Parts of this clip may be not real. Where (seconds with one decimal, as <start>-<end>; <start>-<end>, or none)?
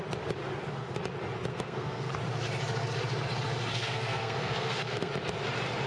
1.5-2.1; 3.7-5.1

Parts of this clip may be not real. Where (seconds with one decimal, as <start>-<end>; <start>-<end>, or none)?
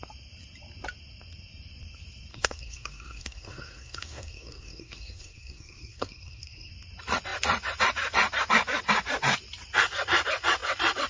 2.3-6.7